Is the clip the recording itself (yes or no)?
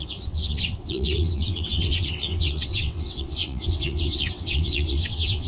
no